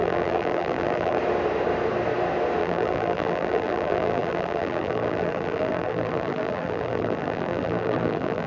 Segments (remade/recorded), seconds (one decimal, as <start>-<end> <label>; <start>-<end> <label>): 0.0-1.2 remade; 1.2-2.6 recorded; 2.6-8.5 remade